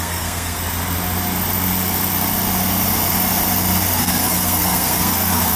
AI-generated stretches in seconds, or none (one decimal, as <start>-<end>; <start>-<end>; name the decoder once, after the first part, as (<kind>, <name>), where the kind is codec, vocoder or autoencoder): 0.0-0.6 (codec, SNAC); 4.0-5.6